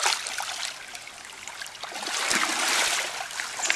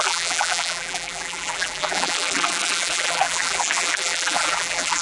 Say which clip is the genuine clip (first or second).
first